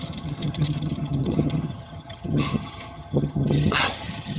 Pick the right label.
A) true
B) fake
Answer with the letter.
B